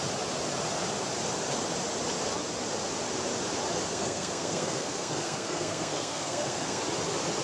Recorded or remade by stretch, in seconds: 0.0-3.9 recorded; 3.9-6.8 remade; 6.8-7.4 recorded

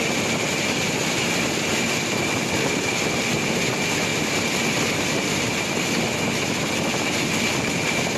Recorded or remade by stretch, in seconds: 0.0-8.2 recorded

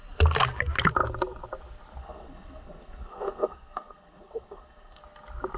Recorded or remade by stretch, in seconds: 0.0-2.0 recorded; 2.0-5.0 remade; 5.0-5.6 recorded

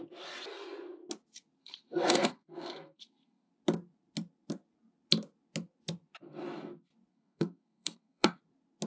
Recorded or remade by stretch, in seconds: 0.0-1.6 recorded; 1.6-3.5 remade; 3.5-7.1 recorded; 7.1-8.4 remade; 8.4-8.9 recorded

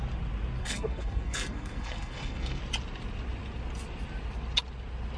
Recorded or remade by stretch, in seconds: 0.0-0.6 recorded; 0.6-2.6 remade; 2.6-5.2 recorded

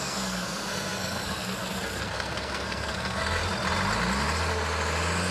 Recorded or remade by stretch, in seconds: 0.0-3.4 remade; 3.4-5.3 recorded